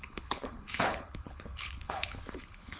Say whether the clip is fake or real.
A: fake